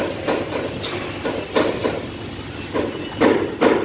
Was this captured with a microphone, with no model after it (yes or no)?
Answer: yes